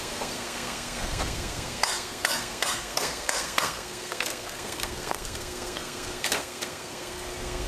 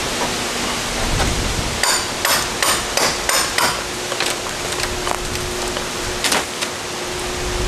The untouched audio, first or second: second